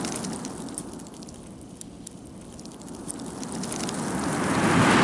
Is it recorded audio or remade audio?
recorded